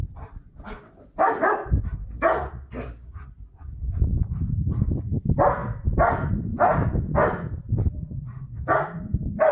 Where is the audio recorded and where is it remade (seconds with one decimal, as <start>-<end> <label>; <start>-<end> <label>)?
0.0-9.5 recorded